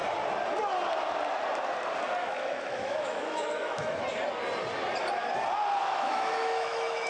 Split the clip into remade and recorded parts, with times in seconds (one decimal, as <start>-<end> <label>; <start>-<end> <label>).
0.0-2.2 recorded; 2.2-4.0 remade; 4.0-5.8 recorded; 5.8-7.1 remade